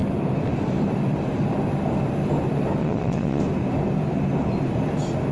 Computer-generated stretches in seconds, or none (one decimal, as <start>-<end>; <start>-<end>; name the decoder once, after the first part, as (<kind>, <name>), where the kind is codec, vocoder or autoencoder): 2.8-3.4 (vocoder, Vocos)